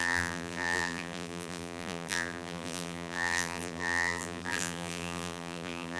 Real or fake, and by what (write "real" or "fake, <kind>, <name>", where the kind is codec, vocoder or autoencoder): fake, vocoder, BigVGAN v2